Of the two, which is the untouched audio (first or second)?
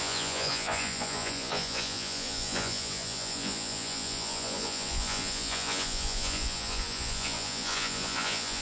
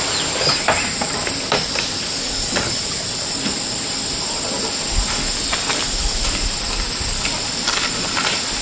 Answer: second